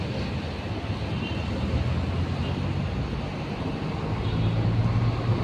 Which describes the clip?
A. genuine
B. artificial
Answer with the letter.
A